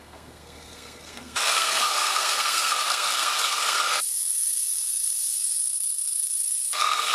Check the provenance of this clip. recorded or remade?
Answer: remade